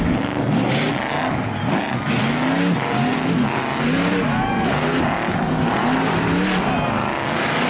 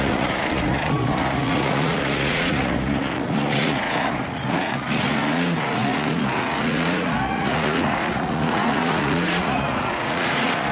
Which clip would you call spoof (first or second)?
second